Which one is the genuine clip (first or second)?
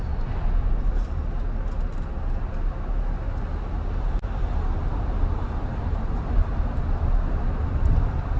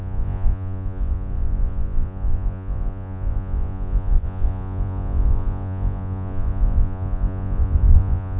first